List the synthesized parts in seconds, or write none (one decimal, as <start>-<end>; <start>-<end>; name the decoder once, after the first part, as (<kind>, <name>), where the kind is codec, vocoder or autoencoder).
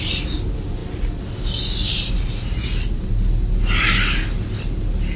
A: none